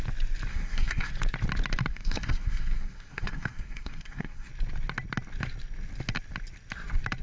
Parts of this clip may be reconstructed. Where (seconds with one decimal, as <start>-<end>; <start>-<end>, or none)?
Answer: 0.5-1.1; 1.9-4.5